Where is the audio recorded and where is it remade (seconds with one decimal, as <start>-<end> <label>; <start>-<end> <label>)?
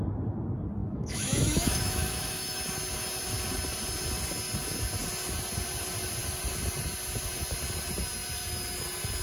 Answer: 0.0-0.8 recorded; 0.8-2.6 remade; 2.6-9.2 recorded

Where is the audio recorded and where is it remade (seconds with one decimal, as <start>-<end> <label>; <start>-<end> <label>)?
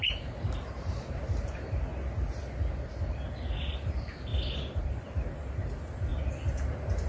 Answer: 0.0-1.9 remade; 1.9-3.0 recorded; 3.0-4.3 remade; 4.3-4.8 recorded; 4.8-6.1 remade; 6.1-7.1 recorded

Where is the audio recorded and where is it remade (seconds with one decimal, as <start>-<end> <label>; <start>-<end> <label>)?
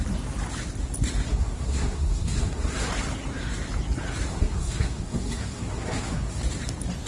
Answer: 0.0-1.3 recorded; 1.3-2.9 remade; 2.9-4.3 recorded; 4.3-6.4 remade; 6.4-7.1 recorded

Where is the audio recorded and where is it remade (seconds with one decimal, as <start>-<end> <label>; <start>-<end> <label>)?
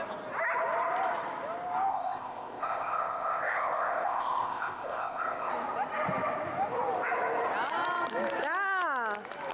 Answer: 0.0-1.9 recorded; 1.9-5.5 remade; 5.5-9.5 recorded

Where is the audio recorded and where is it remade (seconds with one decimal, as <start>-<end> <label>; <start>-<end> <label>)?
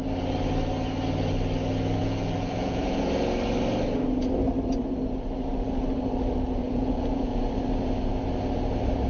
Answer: 0.0-2.0 recorded; 2.0-3.0 remade; 3.0-6.6 recorded; 6.6-7.4 remade; 7.4-9.1 recorded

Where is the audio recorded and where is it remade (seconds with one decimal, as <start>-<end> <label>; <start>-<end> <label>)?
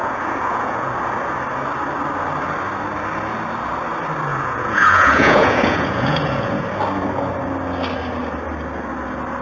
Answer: 0.0-0.9 remade; 0.9-4.3 recorded; 4.3-6.6 remade; 6.6-9.4 recorded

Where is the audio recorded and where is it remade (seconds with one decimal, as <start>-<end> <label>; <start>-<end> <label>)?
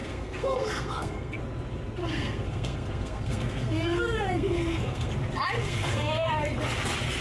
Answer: 0.0-1.4 remade; 1.4-2.0 recorded; 2.0-5.1 remade; 5.1-5.6 recorded; 5.6-6.3 remade; 6.3-7.2 recorded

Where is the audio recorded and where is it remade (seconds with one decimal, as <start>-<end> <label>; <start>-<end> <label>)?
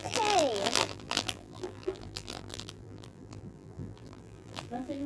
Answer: 0.0-5.1 remade